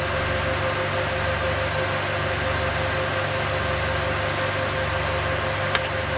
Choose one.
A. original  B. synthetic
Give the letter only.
A